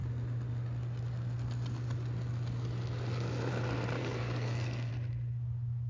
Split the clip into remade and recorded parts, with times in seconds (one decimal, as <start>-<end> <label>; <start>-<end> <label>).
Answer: 0.0-4.0 recorded; 4.0-4.9 remade; 4.9-5.9 recorded